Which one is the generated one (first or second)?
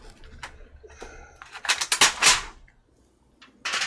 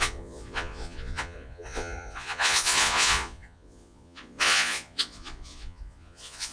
second